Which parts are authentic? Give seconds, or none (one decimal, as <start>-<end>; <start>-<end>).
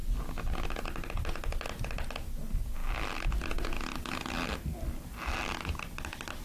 0.0-6.4